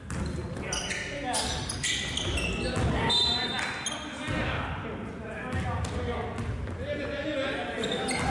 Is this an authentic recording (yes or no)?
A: yes